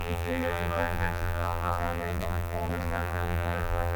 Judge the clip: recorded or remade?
remade